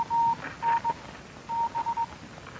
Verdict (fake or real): real